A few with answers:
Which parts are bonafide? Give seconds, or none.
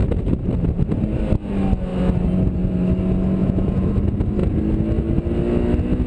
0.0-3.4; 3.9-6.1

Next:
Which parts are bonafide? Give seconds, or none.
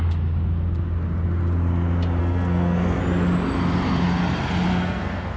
0.0-2.2; 3.0-4.7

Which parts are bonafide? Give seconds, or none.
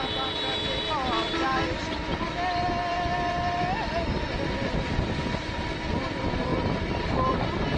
0.0-7.8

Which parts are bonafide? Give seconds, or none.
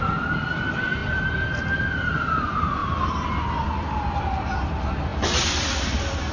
0.0-6.3